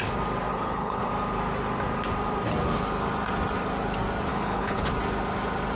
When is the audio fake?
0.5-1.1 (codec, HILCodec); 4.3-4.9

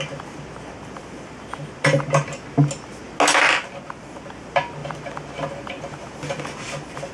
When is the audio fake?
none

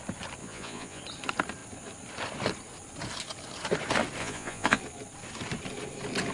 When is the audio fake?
0.4-1.0 (vocoder, Vocos); 4.2-4.8

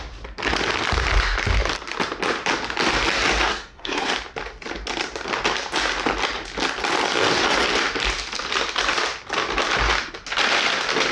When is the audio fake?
3.5-4.1 (codec, SNAC)